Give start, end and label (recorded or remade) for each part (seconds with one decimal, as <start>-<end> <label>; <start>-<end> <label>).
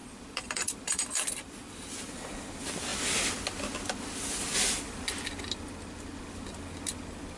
0.0-1.8 remade; 1.8-7.4 recorded